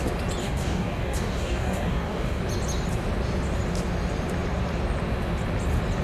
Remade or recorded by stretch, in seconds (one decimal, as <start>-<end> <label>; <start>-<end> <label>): 0.0-0.4 recorded; 0.4-2.4 remade; 2.4-6.0 recorded